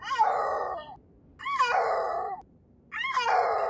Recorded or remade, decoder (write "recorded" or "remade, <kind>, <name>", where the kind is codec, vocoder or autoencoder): recorded